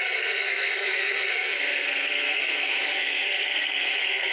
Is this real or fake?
fake